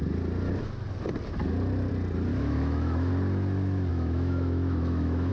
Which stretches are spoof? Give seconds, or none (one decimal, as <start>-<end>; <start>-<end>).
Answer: 2.3-3.1; 3.9-5.3